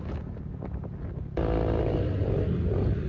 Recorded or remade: recorded